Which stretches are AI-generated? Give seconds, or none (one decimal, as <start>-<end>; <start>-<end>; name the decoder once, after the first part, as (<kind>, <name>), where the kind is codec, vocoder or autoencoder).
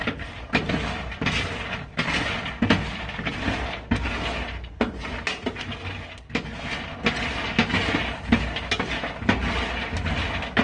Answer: 0.0-0.7 (vocoder, BigVGAN v2)